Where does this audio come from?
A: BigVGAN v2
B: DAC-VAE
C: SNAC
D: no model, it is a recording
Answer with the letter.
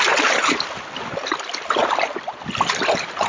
D